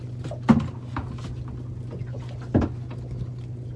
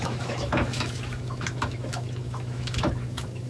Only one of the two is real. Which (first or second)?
first